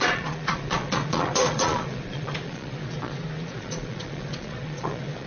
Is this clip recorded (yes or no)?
no